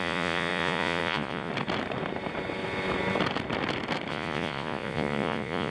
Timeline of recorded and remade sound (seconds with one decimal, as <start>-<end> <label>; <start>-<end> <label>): 0.0-1.5 remade; 1.5-4.1 recorded; 4.1-5.7 remade